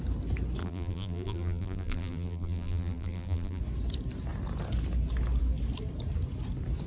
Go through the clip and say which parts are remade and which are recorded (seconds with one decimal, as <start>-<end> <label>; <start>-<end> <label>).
0.0-0.6 recorded; 0.6-3.6 remade; 3.6-6.9 recorded